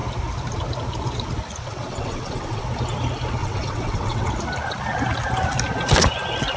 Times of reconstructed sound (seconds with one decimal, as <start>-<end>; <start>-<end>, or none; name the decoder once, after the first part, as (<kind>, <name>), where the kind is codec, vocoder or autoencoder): 1.6-2.6 (vocoder, WaveNeXt); 3.4-4.3